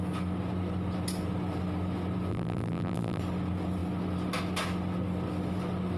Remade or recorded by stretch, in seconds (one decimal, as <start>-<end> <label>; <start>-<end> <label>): 0.0-2.3 recorded; 2.3-3.2 remade; 3.2-6.0 recorded